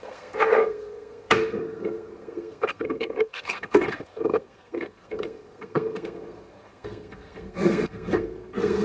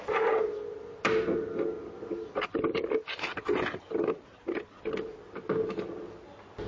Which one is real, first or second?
second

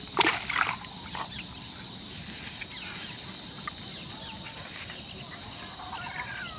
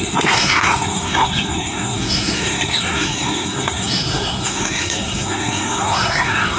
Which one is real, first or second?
first